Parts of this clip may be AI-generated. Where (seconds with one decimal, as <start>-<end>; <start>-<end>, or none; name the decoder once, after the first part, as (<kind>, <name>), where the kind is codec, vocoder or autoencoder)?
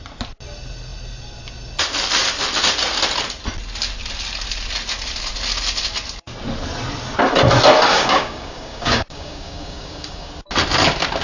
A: 7.9-10.3 (codec, DAC)